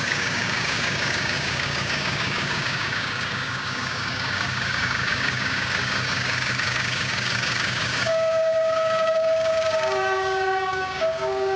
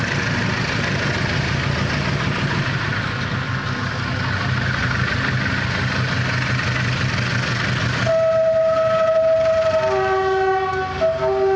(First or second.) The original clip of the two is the second